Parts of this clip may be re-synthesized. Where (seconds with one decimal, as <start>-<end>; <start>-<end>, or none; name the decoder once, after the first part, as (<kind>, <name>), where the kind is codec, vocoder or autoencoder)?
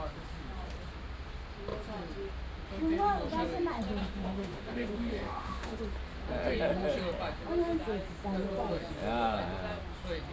4.0-5.8 (autoencoder, DAC-VAE)